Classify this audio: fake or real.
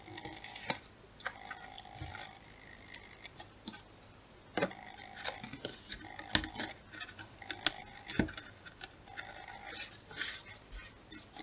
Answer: real